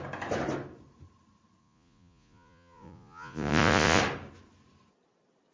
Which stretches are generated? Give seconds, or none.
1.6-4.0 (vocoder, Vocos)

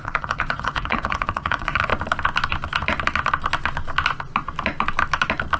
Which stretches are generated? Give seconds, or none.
0.0-1.9 (vocoder, Vocos)

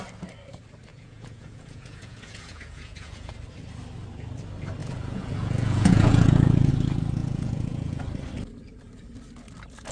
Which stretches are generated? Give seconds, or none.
0.9-3.3 (vocoder, Vocos); 4.8-6.7; 7.2-8.0